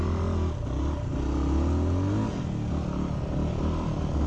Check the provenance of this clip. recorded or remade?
recorded